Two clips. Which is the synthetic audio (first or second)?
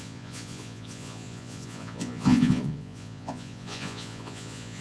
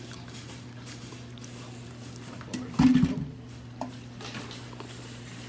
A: first